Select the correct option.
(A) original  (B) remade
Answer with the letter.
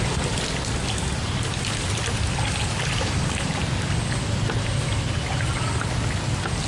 A